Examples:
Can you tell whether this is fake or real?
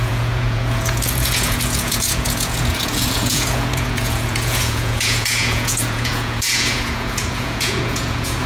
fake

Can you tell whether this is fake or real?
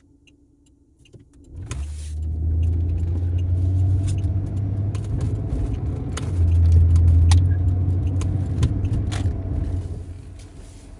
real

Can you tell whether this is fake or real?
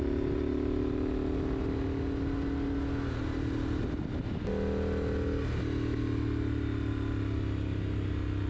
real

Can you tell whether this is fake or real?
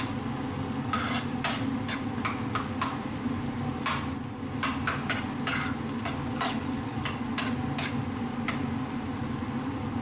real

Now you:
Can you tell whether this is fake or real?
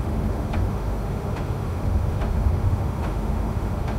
fake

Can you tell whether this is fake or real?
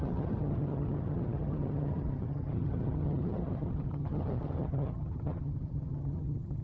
fake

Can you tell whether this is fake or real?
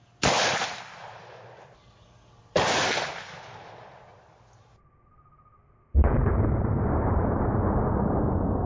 real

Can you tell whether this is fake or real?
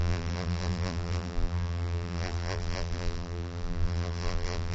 fake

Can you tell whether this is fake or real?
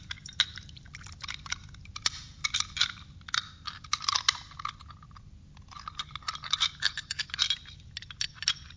real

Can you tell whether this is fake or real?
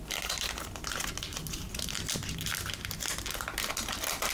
real